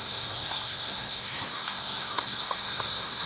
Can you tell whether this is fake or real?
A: fake